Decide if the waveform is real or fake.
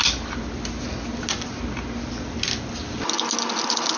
real